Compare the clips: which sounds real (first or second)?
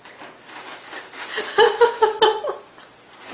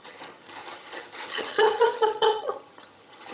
first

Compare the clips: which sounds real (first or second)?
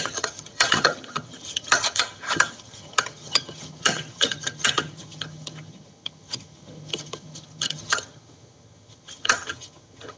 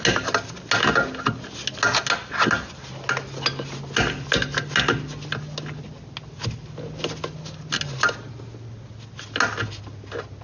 second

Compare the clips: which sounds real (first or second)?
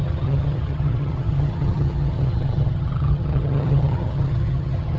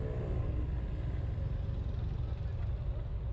second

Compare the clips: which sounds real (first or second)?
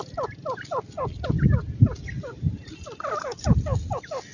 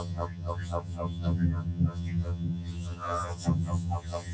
first